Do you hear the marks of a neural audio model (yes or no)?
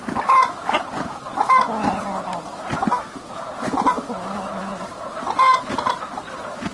no